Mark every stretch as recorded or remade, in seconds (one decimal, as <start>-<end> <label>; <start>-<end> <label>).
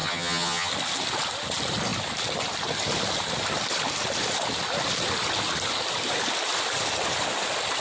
0.0-0.7 remade; 0.7-7.8 recorded